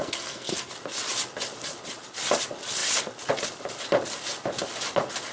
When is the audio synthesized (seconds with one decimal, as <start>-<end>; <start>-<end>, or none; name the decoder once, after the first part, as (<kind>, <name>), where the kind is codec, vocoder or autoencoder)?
0.0-0.7 (codec, SNAC)